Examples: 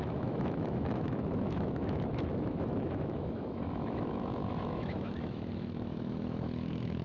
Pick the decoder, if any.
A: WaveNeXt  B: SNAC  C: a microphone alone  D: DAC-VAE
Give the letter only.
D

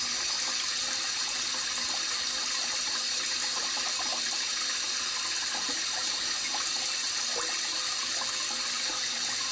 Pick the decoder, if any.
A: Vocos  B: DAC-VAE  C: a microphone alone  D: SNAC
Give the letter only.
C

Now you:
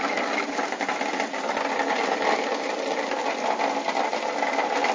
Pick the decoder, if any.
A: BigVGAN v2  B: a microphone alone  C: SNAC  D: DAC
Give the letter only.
B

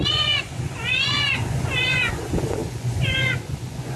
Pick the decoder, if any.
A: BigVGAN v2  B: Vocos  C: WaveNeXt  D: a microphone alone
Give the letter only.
B